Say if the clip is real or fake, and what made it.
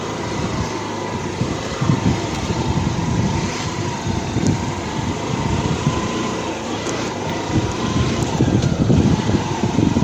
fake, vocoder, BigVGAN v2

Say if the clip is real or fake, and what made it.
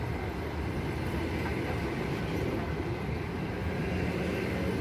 real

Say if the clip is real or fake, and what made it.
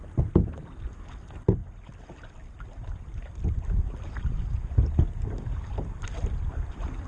real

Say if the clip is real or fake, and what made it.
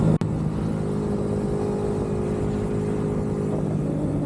real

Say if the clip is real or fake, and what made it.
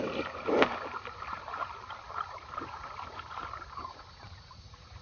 real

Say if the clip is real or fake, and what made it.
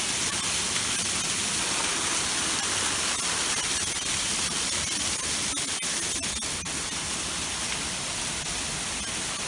real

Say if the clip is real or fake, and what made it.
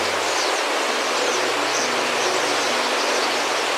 real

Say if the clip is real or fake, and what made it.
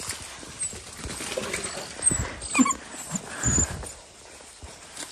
real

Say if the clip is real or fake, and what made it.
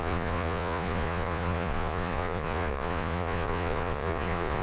fake, vocoder, Vocos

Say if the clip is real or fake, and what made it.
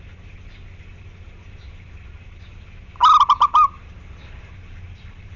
real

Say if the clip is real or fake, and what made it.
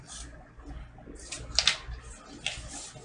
real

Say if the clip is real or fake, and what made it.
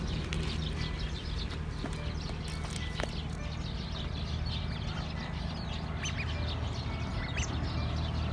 real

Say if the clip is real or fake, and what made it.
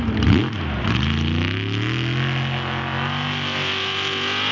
real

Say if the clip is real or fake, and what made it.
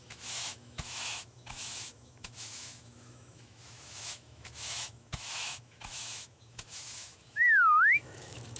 fake, autoencoder, DAC-VAE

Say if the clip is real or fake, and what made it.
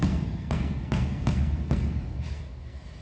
fake, codec, SNAC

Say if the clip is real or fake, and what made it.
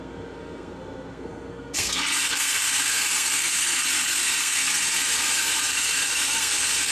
fake, codec, SNAC